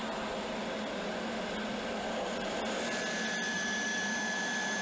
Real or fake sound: real